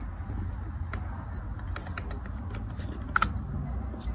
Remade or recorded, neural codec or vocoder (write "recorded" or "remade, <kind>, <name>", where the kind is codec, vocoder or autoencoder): recorded